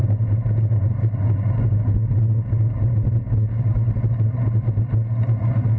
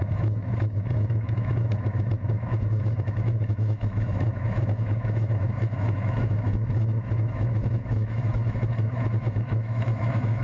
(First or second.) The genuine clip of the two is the first